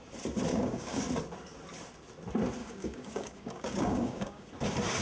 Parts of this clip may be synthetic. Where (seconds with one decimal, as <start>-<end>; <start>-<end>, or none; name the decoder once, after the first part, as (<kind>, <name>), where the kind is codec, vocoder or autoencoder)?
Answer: 0.5-1.0 (codec, DAC); 2.6-4.5